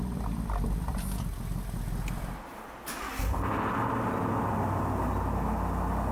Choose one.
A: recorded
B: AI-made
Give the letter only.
A